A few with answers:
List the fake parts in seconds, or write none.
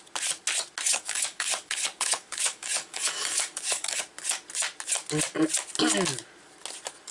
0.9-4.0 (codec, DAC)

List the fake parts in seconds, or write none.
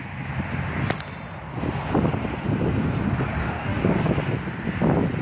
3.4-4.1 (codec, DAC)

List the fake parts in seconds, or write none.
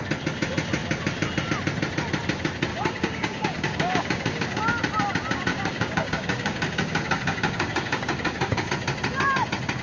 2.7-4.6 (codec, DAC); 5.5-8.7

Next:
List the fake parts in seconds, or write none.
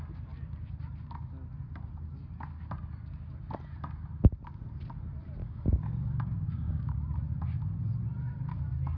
5.4-7.0 (codec, DAC)